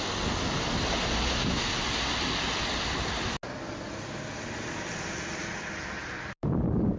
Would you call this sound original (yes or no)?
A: yes